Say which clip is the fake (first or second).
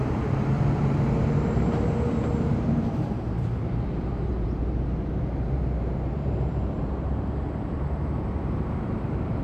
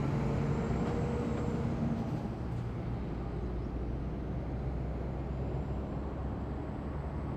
first